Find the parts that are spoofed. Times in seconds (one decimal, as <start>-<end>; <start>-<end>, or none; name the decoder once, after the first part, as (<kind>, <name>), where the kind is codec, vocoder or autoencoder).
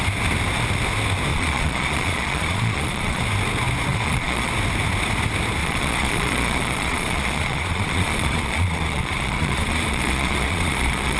1.3-3.2 (vocoder, Vocos); 3.9-4.5; 5.6-11.2